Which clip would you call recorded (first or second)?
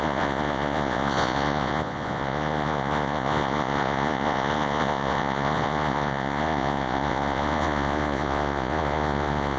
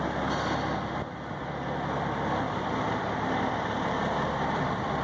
second